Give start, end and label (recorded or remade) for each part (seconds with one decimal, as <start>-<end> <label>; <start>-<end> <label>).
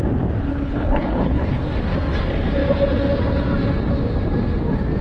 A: 0.0-0.5 recorded; 0.5-1.6 remade; 1.6-5.0 recorded